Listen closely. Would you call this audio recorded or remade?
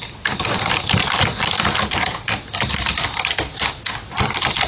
recorded